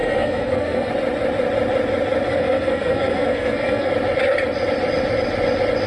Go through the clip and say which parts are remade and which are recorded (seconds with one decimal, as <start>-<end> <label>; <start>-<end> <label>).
0.0-0.9 remade; 0.9-2.3 recorded; 2.3-3.9 remade; 3.9-5.9 recorded